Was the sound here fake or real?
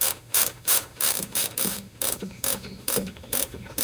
fake